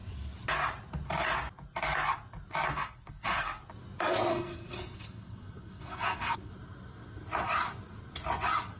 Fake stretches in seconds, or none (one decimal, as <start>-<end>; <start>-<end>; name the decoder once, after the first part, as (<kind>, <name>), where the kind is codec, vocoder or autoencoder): 2.7-3.6 (codec, SNAC); 4.3-6.5